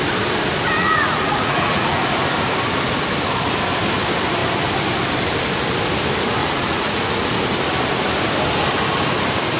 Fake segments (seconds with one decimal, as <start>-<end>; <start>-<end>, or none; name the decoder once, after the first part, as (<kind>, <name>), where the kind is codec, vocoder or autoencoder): 0.8-2.0 (vocoder, Vocos); 6.4-7.0